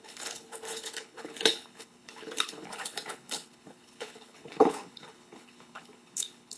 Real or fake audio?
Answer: fake